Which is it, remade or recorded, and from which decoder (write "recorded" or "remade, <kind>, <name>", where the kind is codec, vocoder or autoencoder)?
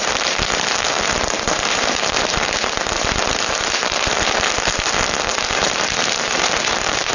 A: remade, vocoder, BigVGAN v2